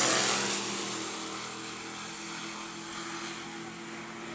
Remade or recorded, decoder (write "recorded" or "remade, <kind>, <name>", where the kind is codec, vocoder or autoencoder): recorded